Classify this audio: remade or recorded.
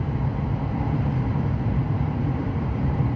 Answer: remade